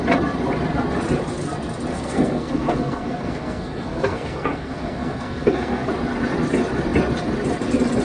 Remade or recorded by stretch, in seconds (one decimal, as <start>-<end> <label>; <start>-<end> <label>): 0.0-1.9 recorded; 1.9-5.9 remade; 5.9-8.0 recorded